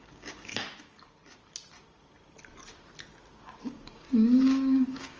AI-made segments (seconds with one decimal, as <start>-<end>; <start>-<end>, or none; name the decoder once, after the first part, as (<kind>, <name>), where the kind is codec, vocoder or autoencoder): 0.0-0.5 (codec, DAC); 3.6-5.2